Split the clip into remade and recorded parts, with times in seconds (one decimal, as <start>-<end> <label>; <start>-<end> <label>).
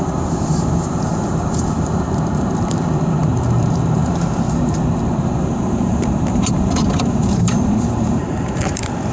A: 0.0-9.1 remade